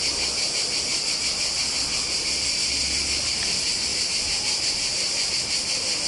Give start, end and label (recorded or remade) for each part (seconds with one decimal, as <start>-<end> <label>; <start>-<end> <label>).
0.0-3.9 recorded; 3.9-5.3 remade; 5.3-6.1 recorded

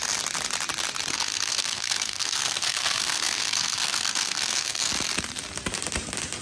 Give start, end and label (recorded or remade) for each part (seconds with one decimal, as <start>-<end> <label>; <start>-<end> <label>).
0.0-1.1 recorded; 1.1-4.9 remade; 4.9-6.4 recorded

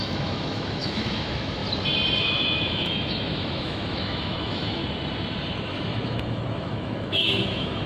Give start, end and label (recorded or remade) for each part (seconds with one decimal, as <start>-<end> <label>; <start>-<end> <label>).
0.0-1.6 remade; 1.6-2.2 recorded; 2.2-4.8 remade; 4.8-5.6 recorded; 5.6-7.9 remade

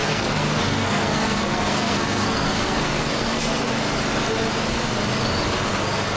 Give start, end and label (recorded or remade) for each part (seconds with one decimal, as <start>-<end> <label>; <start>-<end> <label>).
0.0-3.7 remade; 3.7-6.2 recorded

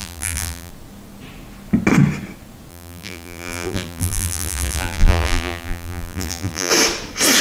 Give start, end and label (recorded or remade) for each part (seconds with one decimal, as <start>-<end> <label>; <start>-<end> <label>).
0.0-0.7 remade; 0.7-2.7 recorded; 2.7-6.7 remade; 6.7-7.4 recorded

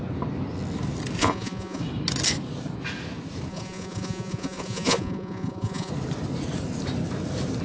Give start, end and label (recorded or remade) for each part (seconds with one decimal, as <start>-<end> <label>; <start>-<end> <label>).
0.0-1.2 recorded; 1.2-1.8 remade; 1.8-3.5 recorded; 3.5-5.9 remade; 5.9-7.6 recorded

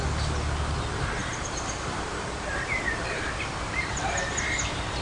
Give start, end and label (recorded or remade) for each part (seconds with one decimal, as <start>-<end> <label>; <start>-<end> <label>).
0.0-1.2 recorded; 1.2-4.2 remade; 4.2-5.0 recorded